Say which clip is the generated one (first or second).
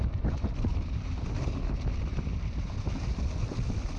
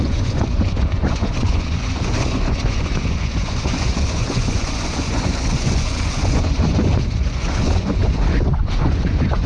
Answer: second